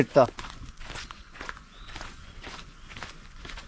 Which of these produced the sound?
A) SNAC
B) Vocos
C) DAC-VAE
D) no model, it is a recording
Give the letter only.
B